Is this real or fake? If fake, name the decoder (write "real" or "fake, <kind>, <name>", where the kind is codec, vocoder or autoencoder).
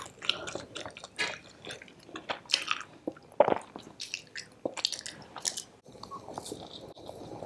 real